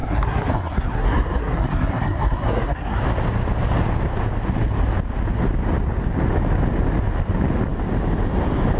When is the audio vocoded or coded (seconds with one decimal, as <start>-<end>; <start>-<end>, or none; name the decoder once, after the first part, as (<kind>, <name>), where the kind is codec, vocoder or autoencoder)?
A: 0.0-3.0 (codec, SNAC)

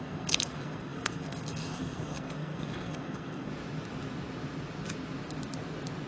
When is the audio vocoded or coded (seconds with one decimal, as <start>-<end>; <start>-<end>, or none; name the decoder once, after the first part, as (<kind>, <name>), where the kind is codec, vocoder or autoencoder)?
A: 0.0-3.5 (codec, SNAC)

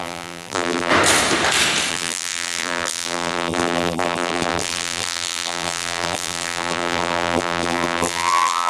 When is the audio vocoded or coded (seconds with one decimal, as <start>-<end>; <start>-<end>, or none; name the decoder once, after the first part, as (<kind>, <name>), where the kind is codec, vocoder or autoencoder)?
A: 0.0-0.9 (vocoder, BigVGAN v2); 1.9-8.7

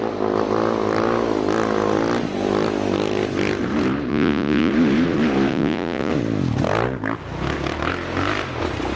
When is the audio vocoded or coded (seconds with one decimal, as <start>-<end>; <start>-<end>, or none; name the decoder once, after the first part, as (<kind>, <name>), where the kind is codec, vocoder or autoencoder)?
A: 4.1-4.7 (vocoder, Vocos); 5.5-6.1

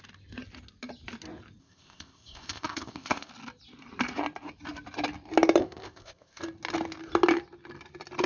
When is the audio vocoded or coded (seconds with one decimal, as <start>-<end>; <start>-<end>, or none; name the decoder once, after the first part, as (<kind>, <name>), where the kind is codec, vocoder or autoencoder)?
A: 1.6-3.3 (codec, ZipCodec); 5.6-6.4

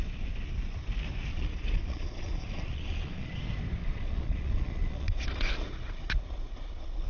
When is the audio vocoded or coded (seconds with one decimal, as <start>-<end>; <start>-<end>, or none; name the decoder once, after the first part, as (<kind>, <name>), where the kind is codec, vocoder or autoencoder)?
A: 1.3-3.4 (vocoder, Vocos); 3.8-6.1

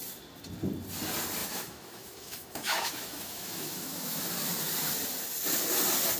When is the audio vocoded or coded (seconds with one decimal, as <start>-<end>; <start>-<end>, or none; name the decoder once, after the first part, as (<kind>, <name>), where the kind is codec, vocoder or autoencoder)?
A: 1.4-4.2 (autoencoder, DAC-VAE)

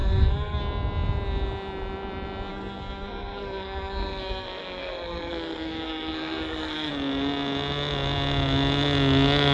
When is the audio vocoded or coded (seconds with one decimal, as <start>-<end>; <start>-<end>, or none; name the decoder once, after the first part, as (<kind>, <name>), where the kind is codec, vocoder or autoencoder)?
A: 0.0-0.6 (codec, SNAC); 2.5-6.9